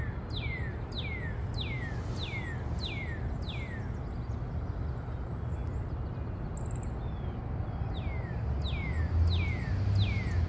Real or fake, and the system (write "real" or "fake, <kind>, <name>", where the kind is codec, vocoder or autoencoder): real